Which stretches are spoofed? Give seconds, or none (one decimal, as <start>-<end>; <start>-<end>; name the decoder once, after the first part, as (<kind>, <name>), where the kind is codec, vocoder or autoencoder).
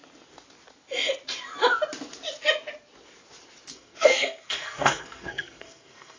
3.7-6.2 (codec, SNAC)